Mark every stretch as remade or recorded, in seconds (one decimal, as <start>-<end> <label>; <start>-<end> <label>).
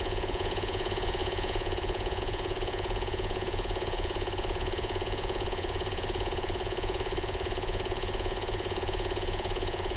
0.0-10.0 remade